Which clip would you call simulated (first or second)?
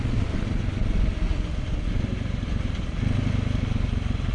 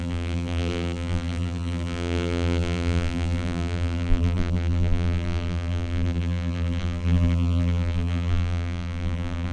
second